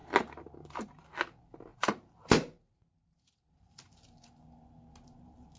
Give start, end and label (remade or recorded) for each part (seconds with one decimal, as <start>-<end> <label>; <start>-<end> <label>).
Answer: 0.0-1.0 remade; 1.0-1.7 recorded; 1.7-3.9 remade; 3.9-5.6 recorded